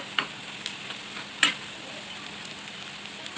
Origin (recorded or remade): recorded